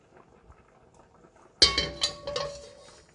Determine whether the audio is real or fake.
real